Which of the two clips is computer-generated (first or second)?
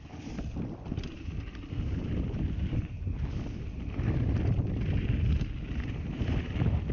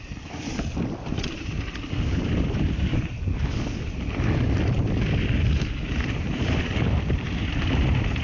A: second